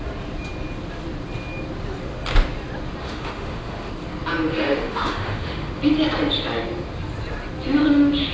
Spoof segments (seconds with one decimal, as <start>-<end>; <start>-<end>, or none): 3.0-3.9; 4.5-5.7